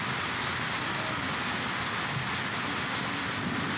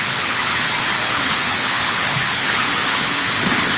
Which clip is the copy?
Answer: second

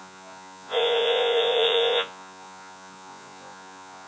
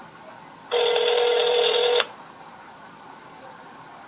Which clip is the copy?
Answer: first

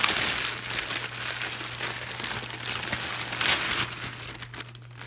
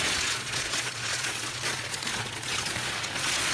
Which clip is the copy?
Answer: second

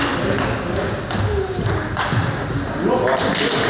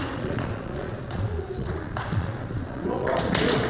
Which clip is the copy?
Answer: second